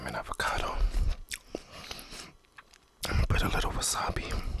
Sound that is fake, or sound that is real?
real